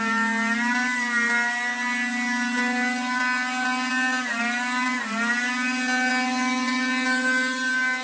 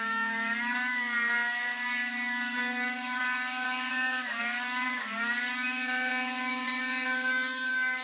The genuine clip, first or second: first